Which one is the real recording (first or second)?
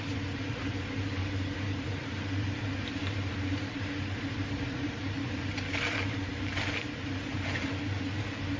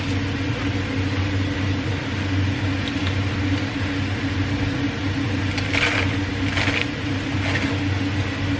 second